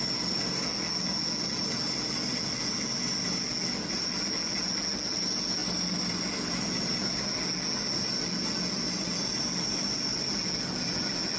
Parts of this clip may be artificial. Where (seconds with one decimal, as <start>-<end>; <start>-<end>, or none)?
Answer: none